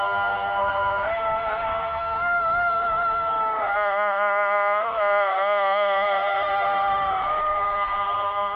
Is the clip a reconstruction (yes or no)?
yes